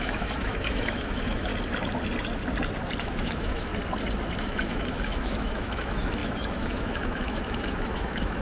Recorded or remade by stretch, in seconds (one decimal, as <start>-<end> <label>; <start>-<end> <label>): 0.0-1.5 remade; 1.5-3.0 recorded; 3.0-3.7 remade; 3.7-4.4 recorded; 4.4-8.4 remade